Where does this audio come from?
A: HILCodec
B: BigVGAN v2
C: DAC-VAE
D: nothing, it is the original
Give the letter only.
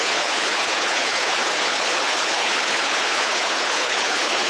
A